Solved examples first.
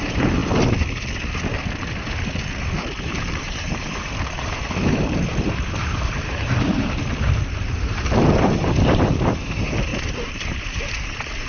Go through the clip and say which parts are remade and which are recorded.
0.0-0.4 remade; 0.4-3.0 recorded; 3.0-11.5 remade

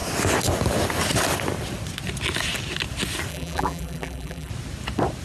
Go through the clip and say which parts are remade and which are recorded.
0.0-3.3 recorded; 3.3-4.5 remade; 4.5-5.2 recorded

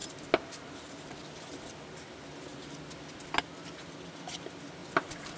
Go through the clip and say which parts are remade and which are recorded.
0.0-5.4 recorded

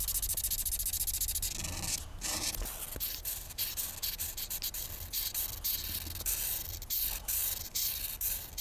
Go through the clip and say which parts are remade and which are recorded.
0.0-8.6 recorded